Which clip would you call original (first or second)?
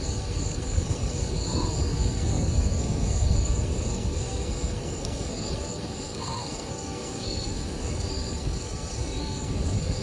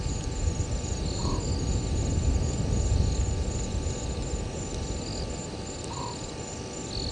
second